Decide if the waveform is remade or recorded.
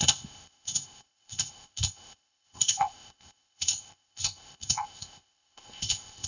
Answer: remade